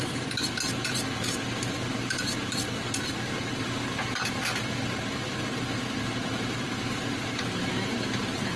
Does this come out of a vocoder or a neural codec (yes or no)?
yes